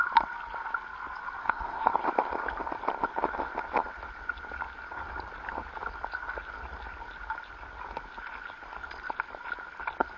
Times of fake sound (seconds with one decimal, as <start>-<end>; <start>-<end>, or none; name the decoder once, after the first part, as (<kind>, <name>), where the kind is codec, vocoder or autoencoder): 1.4-1.9 (codec, SNAC)